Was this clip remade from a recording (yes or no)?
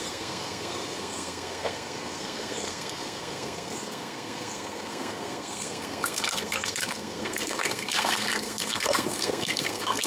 yes